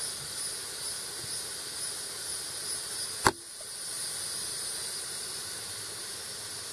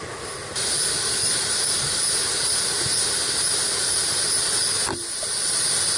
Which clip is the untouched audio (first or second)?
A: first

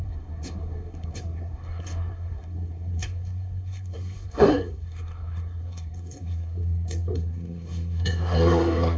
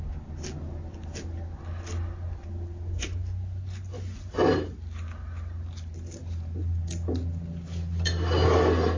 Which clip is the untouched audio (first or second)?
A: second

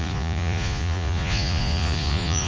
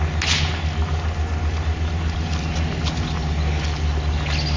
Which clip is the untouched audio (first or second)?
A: second